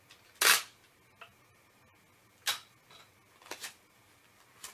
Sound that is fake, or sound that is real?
real